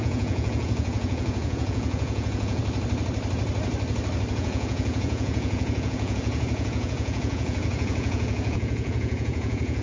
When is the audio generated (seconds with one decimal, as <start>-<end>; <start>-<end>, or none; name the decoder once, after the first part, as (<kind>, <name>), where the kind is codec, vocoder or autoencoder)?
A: 0.0-2.6 (vocoder, Vocos); 4.3-9.8